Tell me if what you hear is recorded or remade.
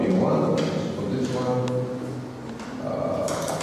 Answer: recorded